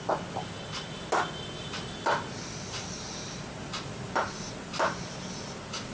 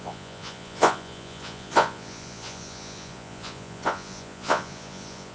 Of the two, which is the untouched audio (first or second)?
first